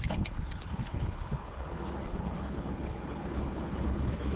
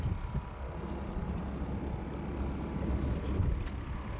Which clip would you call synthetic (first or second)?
first